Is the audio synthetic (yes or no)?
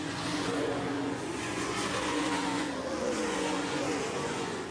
yes